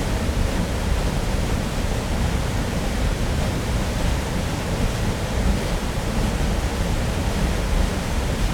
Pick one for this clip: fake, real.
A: fake